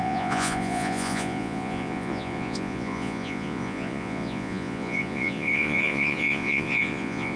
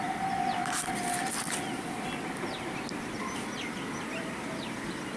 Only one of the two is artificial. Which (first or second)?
first